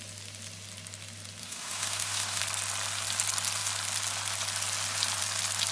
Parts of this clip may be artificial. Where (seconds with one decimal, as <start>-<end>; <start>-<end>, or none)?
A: 1.4-2.4